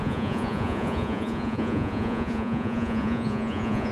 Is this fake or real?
fake